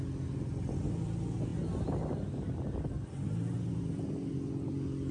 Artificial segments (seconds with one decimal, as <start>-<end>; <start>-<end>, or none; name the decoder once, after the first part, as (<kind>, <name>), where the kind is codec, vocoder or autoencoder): none